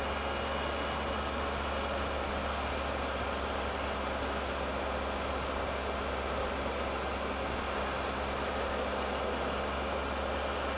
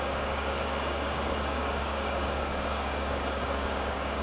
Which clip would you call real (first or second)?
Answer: first